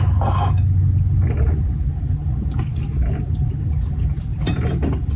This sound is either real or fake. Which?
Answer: real